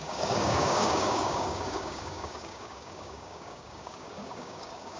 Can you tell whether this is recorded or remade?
remade